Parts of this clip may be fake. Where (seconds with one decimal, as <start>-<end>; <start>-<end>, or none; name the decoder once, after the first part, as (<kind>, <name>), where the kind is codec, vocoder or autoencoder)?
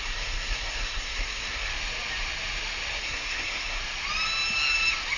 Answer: 0.0-1.7 (codec, SNAC); 3.0-3.8